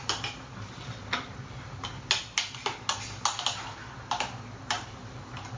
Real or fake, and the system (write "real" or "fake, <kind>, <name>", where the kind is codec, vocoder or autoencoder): real